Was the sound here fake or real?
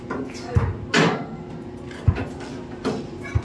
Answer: real